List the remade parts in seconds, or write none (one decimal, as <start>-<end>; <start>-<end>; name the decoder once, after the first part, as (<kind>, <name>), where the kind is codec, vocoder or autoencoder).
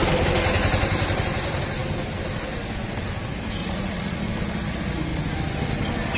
3.6-4.2 (vocoder, Vocos)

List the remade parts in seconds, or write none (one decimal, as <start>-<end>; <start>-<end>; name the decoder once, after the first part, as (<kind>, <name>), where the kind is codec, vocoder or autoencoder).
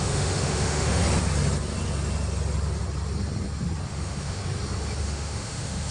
0.0-1.0 (autoencoder, DAC-VAE); 3.9-4.4; 5.0-5.9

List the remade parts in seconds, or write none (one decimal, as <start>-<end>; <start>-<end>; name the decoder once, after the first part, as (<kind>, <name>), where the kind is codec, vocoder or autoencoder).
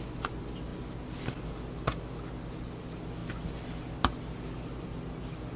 none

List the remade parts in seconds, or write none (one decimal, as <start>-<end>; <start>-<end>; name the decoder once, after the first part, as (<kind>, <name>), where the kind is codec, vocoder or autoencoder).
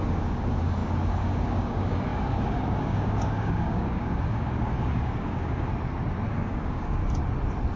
0.0-5.7 (codec, DAC); 6.3-7.0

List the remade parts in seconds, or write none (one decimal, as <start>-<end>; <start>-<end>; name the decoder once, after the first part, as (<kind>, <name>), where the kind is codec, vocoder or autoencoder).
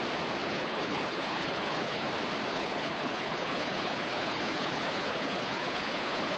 0.4-2.1 (codec, HILCodec); 2.5-6.4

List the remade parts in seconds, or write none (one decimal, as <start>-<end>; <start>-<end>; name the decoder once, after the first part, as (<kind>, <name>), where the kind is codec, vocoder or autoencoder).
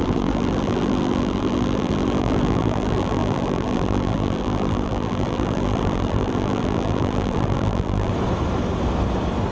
0.0-8.1 (vocoder, BigVGAN v2)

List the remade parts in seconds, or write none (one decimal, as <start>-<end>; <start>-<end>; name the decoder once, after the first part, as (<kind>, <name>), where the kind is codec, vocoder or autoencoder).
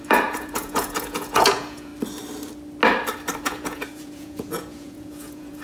0.0-1.9 (vocoder, Vocos); 3.4-5.6